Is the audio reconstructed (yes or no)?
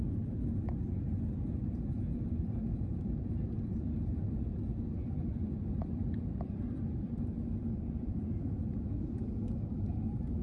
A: yes